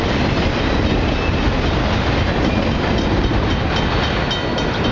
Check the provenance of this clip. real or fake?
real